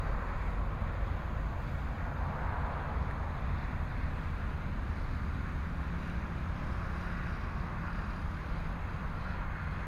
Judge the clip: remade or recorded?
recorded